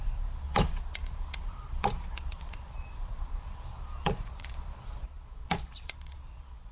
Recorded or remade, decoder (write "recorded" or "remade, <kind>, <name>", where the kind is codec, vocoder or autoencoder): remade, vocoder, Vocos